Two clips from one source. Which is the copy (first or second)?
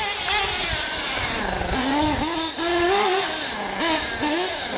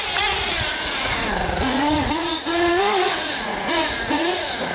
second